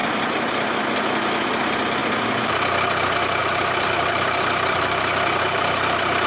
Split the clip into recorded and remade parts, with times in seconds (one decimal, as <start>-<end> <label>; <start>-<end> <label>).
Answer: 0.0-0.8 remade; 0.8-3.4 recorded; 3.4-6.3 remade

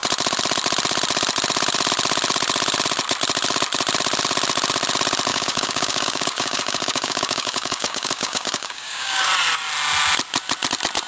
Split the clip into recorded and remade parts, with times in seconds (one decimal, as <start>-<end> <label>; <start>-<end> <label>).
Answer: 0.0-5.3 recorded; 5.3-9.3 remade; 9.3-11.1 recorded